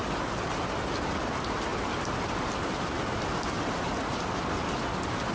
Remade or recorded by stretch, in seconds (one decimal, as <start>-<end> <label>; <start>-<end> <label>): 0.0-5.3 recorded